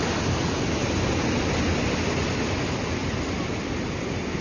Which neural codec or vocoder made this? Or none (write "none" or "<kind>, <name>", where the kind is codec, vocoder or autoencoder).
none